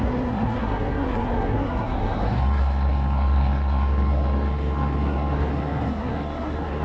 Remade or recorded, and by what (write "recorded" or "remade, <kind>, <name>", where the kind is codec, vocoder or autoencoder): remade, codec, SNAC